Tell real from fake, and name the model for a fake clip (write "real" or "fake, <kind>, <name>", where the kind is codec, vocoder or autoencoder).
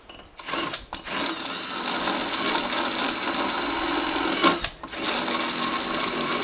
real